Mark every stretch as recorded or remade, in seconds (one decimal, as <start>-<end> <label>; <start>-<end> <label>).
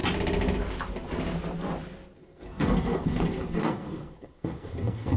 0.0-2.2 recorded; 2.2-5.2 remade